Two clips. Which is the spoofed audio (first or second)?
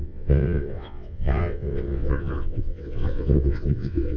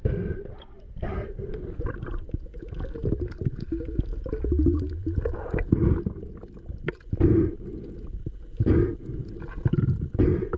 first